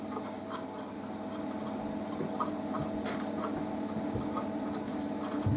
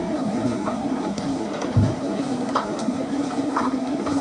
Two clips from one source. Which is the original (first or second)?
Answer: first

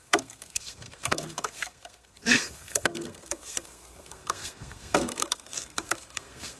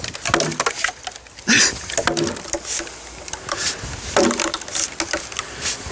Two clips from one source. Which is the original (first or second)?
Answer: second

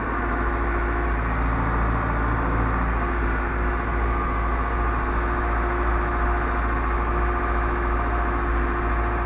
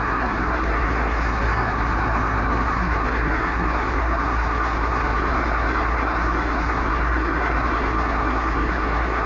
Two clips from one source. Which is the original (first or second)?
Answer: first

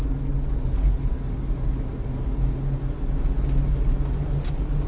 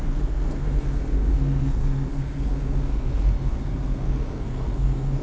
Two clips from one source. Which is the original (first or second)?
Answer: first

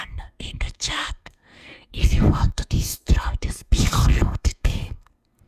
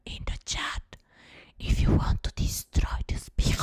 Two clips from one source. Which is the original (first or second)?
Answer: second